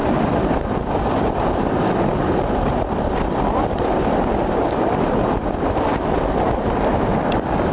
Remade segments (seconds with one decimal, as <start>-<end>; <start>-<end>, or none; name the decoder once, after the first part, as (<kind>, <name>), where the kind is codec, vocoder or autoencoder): 0.0-5.9 (vocoder, BigVGAN v2); 7.1-7.7